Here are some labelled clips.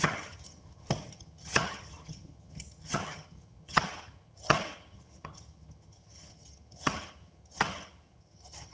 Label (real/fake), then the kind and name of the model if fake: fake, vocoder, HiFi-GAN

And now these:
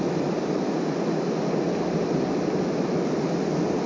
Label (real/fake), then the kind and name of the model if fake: real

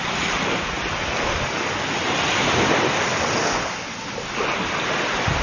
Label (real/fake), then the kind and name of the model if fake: real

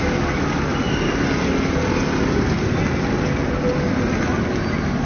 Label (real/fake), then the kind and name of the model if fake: real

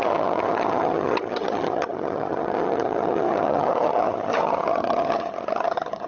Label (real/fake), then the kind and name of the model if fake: fake, vocoder, HiFi-GAN